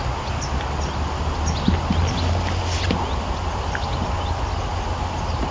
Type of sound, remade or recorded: recorded